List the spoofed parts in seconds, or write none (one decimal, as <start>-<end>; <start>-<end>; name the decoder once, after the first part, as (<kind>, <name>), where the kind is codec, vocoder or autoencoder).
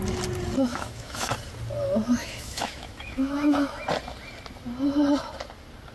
0.7-1.3 (autoencoder, DAC-VAE); 2.2-3.8